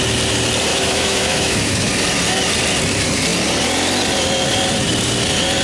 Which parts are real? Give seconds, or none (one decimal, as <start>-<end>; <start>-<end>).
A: 0.0-0.7; 1.9-5.6

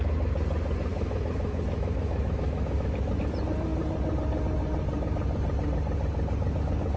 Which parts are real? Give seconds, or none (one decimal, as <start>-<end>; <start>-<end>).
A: 0.0-0.9; 3.1-7.0

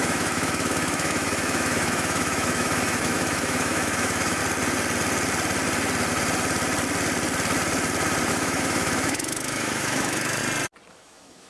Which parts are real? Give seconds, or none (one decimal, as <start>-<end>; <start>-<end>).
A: 4.4-8.3; 10.4-10.9

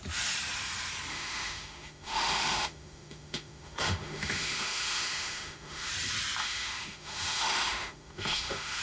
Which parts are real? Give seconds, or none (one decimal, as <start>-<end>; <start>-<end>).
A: 0.0-1.1; 5.9-6.4

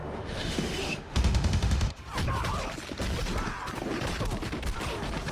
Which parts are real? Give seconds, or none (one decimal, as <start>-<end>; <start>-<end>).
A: 2.0-5.3

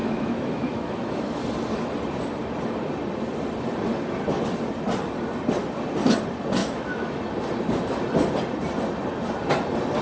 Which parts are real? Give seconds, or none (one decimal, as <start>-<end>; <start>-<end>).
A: 1.4-6.6; 7.2-10.0

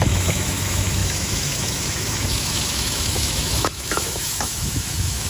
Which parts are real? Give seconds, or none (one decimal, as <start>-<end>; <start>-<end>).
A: none

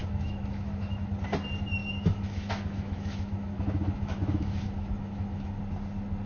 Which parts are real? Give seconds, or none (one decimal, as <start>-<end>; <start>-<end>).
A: 1.1-1.8; 5.6-6.3